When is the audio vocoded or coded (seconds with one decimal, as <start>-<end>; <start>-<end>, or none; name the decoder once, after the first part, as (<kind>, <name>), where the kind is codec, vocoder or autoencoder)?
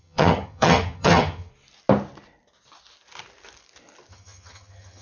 0.0-1.5 (vocoder, HiFi-GAN); 4.1-5.0